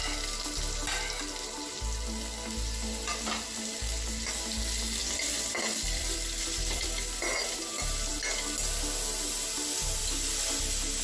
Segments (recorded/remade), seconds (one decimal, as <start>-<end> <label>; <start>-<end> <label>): 0.0-5.0 recorded; 5.0-7.6 remade; 7.6-11.0 recorded